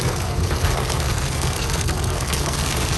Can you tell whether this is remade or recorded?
remade